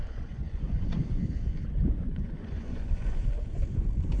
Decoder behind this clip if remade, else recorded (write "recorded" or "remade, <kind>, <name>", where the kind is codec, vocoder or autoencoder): remade, vocoder, Vocos